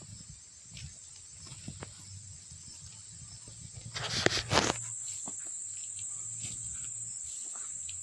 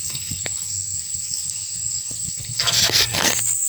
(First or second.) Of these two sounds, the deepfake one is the second